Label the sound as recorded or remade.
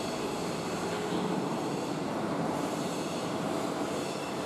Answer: remade